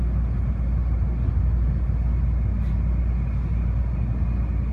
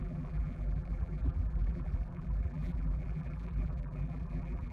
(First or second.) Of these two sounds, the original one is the first